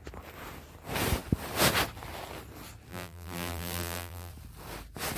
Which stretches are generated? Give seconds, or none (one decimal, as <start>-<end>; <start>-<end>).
2.9-4.3